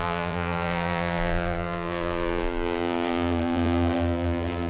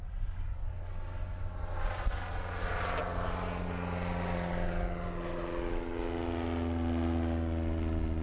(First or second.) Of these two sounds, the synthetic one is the first